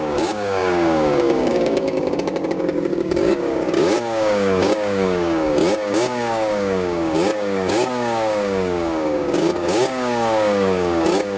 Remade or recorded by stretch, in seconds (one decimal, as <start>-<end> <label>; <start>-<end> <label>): 0.0-11.4 remade